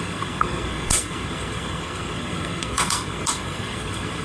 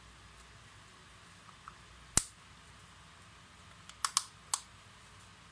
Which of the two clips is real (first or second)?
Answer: second